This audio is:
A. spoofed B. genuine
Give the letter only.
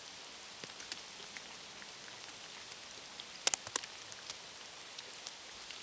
B